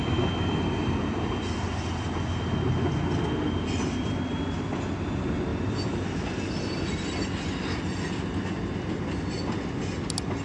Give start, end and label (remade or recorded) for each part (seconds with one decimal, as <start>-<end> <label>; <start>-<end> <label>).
0.0-10.4 recorded